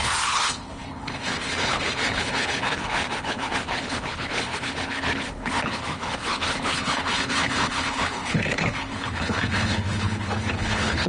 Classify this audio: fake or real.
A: fake